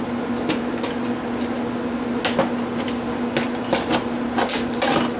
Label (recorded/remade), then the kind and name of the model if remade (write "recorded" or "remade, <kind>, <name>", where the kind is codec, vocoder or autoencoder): recorded